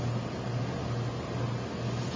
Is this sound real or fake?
real